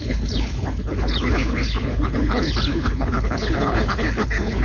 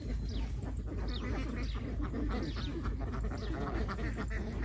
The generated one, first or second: first